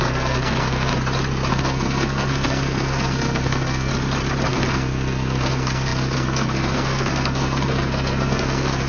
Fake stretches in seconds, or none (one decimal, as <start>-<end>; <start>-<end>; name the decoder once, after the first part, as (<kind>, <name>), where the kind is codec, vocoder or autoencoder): 0.0-0.9 (codec, SNAC); 1.5-3.9; 4.5-8.9